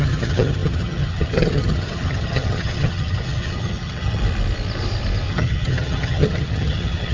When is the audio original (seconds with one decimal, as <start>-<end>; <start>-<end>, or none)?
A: 4.2-5.3